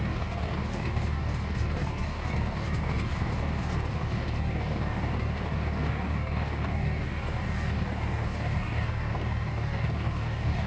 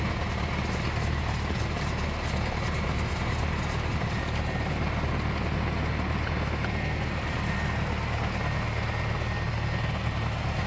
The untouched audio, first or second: second